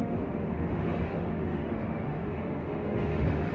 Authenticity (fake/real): fake